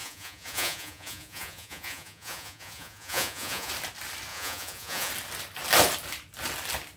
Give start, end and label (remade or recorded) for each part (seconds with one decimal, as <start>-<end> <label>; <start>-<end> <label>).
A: 0.0-3.7 remade; 3.7-4.3 recorded; 4.3-5.1 remade; 5.1-7.0 recorded